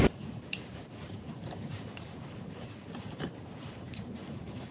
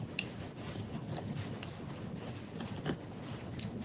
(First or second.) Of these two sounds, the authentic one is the second